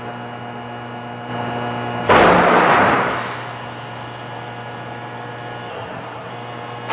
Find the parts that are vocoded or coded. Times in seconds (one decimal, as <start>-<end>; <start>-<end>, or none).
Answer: 5.7-6.3